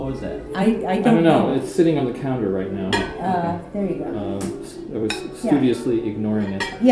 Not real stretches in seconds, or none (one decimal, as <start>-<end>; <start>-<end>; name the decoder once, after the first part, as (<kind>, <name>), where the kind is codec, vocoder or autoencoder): 0.0-1.1 (vocoder, BigVGAN v2); 4.7-5.2